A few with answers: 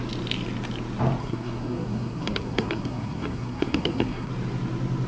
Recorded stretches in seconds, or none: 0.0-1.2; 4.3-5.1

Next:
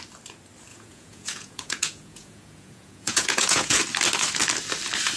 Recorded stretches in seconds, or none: 0.0-0.7; 3.8-5.2

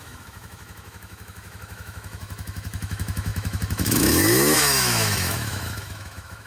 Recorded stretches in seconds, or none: none

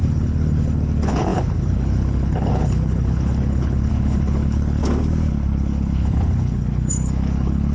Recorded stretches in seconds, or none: 4.8-5.3

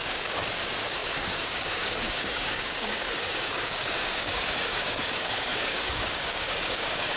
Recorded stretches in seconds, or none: none